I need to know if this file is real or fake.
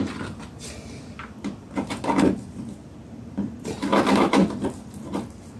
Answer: fake